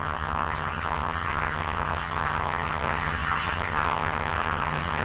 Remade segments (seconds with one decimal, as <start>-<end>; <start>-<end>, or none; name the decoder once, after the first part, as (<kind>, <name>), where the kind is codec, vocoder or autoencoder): 0.0-5.0 (vocoder, HiFi-GAN)